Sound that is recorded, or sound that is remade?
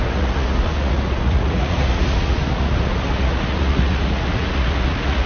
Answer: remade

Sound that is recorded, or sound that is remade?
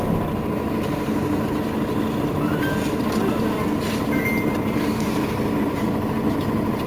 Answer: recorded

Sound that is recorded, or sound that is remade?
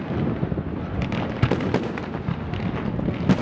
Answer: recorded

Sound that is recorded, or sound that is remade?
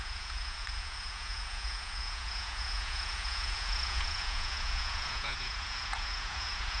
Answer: remade